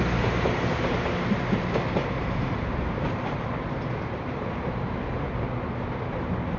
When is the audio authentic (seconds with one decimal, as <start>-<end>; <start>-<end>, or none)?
0.0-2.0; 4.0-6.6